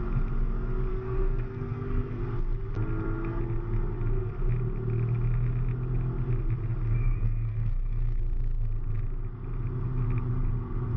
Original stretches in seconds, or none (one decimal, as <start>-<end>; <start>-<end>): 0.0-0.9; 2.2-7.0; 8.2-11.0